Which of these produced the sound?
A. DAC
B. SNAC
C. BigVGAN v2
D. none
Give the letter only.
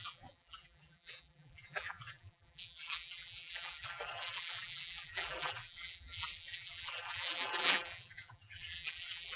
C